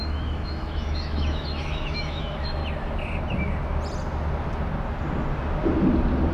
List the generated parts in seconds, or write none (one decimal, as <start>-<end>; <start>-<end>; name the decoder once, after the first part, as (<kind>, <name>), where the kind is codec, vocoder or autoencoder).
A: 0.0-2.6 (autoencoder, DAC-VAE)